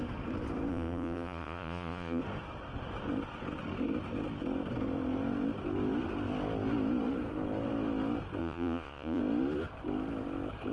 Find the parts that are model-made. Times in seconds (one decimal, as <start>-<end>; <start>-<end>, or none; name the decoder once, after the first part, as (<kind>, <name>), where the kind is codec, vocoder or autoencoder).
0.7-2.2 (vocoder, Vocos); 8.4-9.2